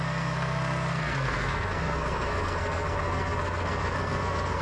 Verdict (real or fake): fake